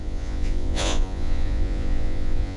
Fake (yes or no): yes